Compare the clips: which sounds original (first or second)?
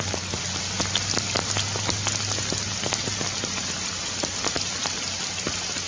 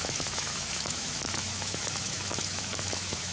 first